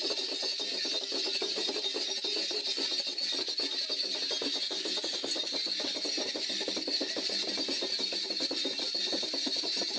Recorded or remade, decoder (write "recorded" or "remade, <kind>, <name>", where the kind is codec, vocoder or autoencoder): recorded